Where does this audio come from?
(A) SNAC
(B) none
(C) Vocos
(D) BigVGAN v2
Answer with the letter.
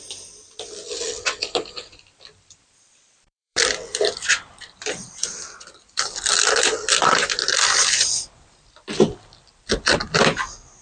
D